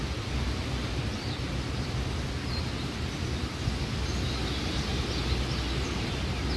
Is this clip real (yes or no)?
yes